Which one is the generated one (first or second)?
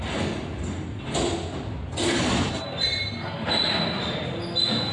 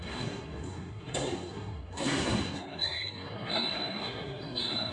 second